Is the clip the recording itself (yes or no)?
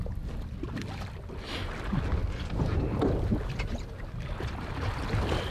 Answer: yes